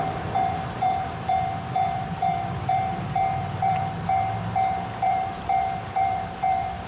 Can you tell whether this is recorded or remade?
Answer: remade